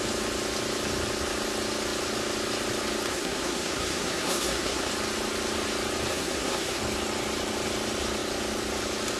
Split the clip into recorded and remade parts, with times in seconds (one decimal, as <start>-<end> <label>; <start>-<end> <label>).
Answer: 0.0-3.1 recorded; 3.1-4.9 remade; 4.9-6.1 recorded; 6.1-6.8 remade; 6.8-9.2 recorded